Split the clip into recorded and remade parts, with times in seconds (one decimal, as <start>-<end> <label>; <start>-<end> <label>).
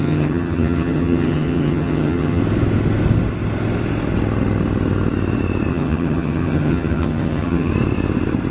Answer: 0.0-2.4 remade; 2.4-5.7 recorded; 5.7-7.7 remade; 7.7-8.5 recorded